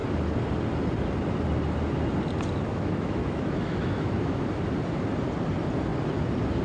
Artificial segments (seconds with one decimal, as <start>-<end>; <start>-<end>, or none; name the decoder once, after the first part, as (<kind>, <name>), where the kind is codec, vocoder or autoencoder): 2.7-4.4 (autoencoder, DAC-VAE)